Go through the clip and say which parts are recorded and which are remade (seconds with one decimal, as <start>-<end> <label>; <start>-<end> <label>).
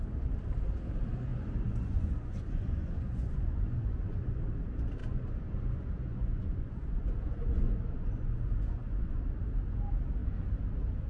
0.0-1.3 recorded; 1.3-4.4 remade; 4.4-5.0 recorded; 5.0-9.2 remade; 9.2-11.1 recorded